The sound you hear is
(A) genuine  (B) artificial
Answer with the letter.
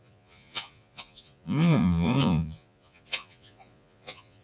B